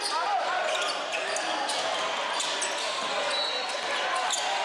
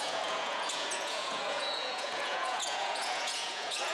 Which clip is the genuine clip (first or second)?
first